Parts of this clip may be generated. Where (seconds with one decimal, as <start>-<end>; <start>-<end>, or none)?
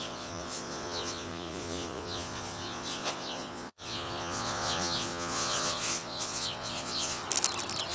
0.0-7.2